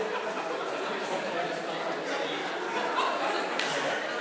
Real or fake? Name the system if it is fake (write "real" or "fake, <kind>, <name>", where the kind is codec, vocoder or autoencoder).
real